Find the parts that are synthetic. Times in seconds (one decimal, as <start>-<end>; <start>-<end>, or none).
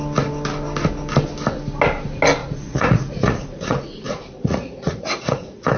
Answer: 2.4-5.8